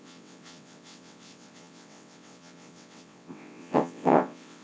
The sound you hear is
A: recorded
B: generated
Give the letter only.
B